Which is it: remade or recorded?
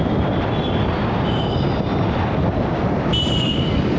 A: recorded